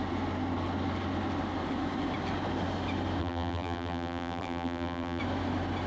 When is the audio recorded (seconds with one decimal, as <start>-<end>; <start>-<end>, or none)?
0.0-3.2; 5.2-5.9